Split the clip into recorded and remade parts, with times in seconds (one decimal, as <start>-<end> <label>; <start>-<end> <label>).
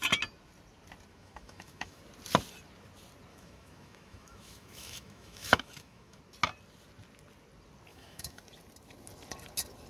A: 0.0-1.1 recorded; 1.1-2.0 remade; 2.0-3.3 recorded; 3.3-6.2 remade; 6.2-7.9 recorded; 7.9-8.4 remade; 8.4-9.9 recorded